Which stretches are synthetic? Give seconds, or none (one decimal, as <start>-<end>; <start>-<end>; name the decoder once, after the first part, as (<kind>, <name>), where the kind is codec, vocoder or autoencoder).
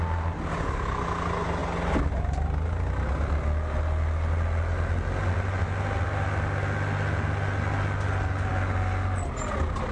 none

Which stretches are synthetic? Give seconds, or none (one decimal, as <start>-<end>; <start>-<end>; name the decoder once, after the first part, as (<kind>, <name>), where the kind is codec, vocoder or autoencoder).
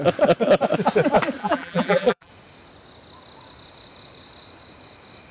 1.4-2.3 (vocoder, BigVGAN v2)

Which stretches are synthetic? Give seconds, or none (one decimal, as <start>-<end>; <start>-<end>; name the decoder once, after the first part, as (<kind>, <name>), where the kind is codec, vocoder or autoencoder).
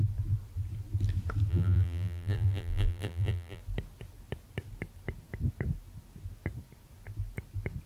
1.5-3.6 (vocoder, BigVGAN v2)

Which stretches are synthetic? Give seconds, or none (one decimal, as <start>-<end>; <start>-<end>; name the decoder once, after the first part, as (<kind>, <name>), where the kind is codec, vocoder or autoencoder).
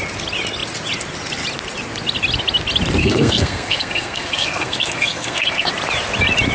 3.0-5.7 (codec, SNAC)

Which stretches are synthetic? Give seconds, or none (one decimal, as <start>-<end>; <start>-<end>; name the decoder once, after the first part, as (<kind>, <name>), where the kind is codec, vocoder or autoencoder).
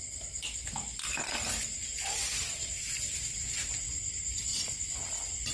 none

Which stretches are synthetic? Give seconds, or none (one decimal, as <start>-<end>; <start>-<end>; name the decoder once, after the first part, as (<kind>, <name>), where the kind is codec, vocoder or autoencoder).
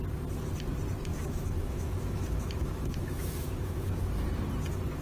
1.1-4.1 (autoencoder, DAC-VAE)